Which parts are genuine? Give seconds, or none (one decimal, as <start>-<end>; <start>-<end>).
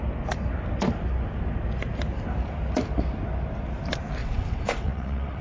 0.0-4.2